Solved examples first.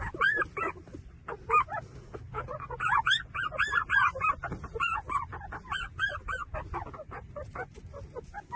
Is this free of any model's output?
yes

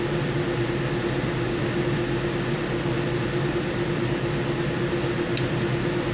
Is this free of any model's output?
yes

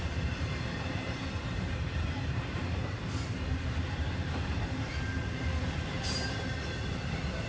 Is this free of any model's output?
no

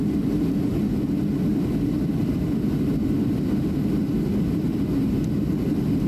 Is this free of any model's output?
yes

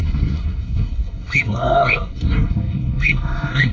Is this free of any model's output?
no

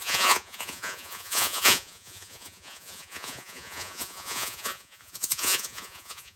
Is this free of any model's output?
no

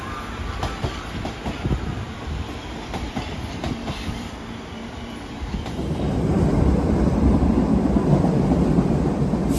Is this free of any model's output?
no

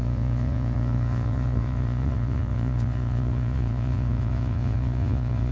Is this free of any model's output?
no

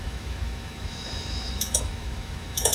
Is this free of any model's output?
no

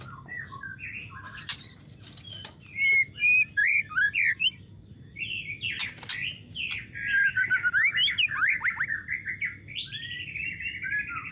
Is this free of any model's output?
no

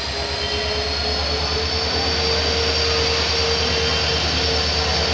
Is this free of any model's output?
yes